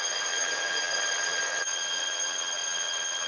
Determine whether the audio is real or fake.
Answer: fake